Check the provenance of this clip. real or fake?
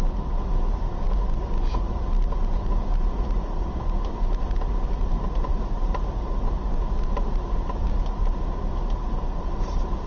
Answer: real